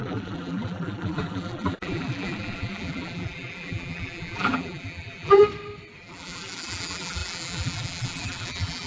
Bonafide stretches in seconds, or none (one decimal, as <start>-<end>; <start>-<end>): 5.4-6.0